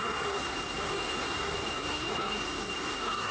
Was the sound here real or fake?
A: fake